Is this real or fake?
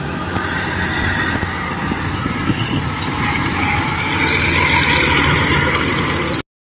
real